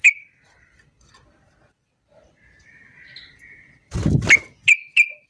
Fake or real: real